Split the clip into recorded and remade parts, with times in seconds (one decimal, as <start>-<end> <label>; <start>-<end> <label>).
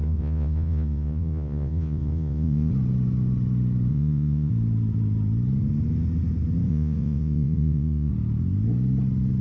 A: 0.0-2.7 remade; 2.7-3.9 recorded; 3.9-4.5 remade; 4.5-6.7 recorded; 6.7-8.1 remade; 8.1-9.4 recorded